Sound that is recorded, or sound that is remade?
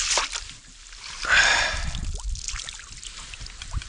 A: recorded